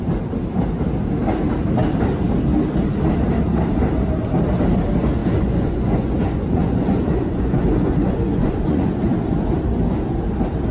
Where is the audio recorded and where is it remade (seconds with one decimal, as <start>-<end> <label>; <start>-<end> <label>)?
0.0-5.2 recorded; 5.2-9.1 remade; 9.1-10.7 recorded